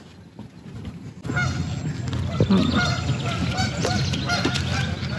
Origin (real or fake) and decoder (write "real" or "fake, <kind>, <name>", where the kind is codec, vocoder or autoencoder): real